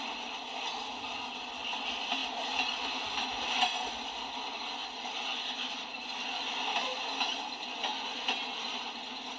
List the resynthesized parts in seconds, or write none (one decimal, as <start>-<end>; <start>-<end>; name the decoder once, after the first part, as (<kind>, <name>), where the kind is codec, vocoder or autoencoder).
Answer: none

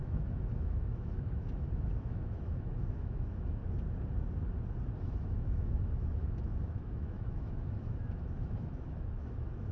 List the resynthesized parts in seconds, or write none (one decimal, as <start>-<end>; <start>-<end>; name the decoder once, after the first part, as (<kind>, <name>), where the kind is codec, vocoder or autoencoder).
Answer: 0.0-3.6 (autoencoder, DAC-VAE); 5.0-9.7

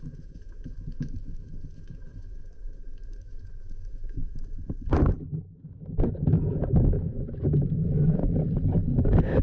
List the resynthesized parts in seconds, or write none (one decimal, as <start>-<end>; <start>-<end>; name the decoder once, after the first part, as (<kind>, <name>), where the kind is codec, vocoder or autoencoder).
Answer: 0.0-4.2 (autoencoder, DAC-VAE); 5.6-8.2

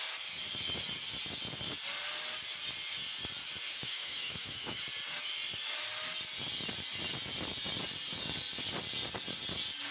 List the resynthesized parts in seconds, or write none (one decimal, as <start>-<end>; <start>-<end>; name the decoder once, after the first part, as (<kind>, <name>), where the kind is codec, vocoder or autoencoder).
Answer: 3.7-4.8 (autoencoder, DAC-VAE)

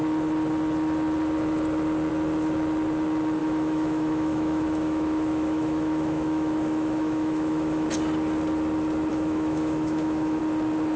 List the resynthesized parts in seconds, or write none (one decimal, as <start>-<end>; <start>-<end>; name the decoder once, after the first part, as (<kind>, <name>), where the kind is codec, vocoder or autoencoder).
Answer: 3.4-7.9 (autoencoder, DAC-VAE); 9.1-10.4

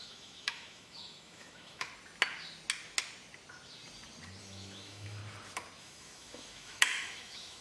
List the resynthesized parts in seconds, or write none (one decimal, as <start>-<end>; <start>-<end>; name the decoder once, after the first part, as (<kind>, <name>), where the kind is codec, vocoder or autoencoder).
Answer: 0.0-1.9 (autoencoder, DAC-VAE); 4.4-5.2; 5.8-7.6

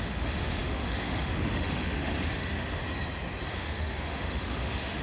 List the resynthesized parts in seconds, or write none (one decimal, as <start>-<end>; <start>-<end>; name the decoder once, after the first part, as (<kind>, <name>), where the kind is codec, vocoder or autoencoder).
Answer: 0.0-2.8 (autoencoder, DAC-VAE); 3.5-5.0

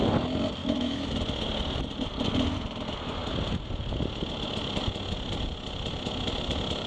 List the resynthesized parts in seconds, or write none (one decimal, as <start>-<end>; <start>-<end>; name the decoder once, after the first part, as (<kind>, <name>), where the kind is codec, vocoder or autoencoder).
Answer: 0.6-1.1 (autoencoder, DAC-VAE)